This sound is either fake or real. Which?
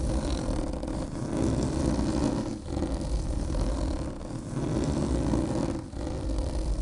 real